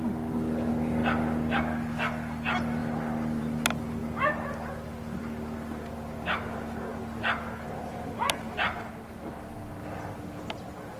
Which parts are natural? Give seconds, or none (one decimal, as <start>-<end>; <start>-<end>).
0.0-11.0